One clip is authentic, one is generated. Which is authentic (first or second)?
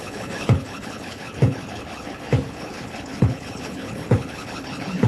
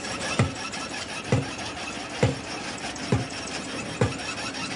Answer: second